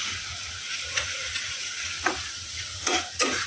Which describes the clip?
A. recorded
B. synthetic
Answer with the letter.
B